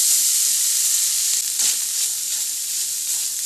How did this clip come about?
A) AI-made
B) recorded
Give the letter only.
B